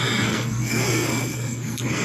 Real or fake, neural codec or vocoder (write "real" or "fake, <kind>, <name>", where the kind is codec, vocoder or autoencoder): fake, codec, SNAC